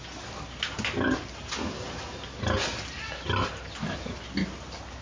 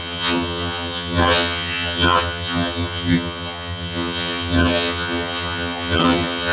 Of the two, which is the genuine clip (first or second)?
first